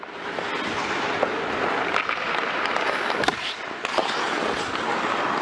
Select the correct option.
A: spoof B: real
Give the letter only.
B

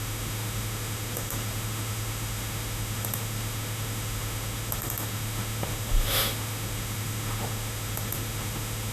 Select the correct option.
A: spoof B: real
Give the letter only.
A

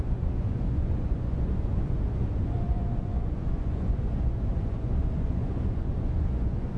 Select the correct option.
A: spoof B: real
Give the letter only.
A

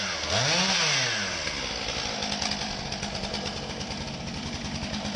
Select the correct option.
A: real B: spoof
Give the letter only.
A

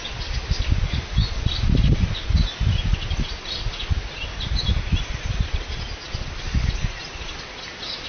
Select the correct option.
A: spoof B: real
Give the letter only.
B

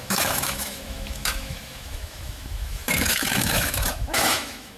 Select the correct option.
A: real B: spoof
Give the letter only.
B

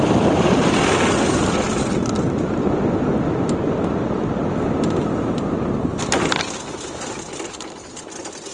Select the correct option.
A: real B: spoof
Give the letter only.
A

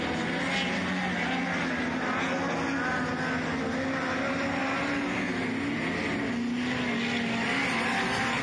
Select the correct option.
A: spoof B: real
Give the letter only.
B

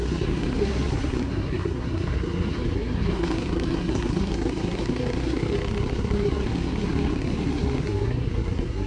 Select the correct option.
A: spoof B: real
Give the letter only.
A